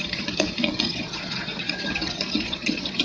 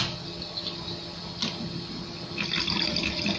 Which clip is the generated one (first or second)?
first